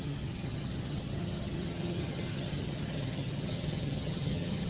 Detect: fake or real fake